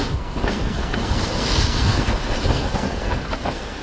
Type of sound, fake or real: fake